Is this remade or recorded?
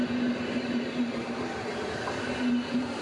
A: remade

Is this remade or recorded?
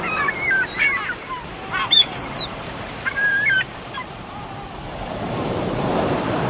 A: remade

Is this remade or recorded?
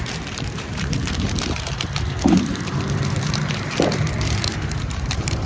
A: remade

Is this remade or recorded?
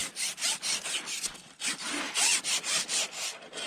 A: recorded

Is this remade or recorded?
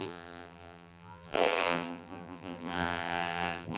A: remade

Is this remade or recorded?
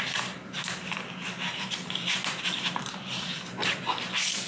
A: recorded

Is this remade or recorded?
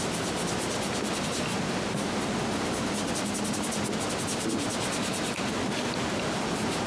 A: recorded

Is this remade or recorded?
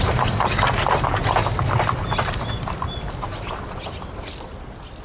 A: remade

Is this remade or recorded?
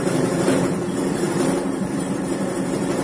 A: remade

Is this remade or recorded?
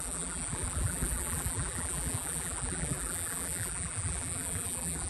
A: remade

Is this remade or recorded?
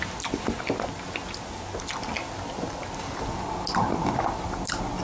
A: recorded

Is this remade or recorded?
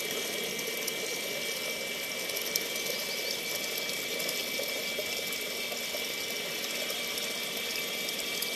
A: recorded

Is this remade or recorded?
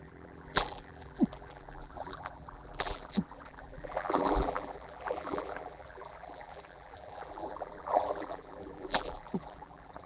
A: remade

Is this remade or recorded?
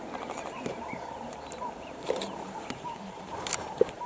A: remade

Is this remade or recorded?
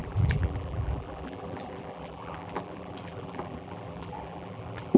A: remade